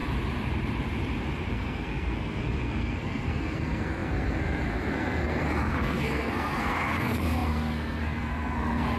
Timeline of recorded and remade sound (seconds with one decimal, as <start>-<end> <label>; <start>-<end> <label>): 0.0-1.5 recorded; 1.5-9.0 remade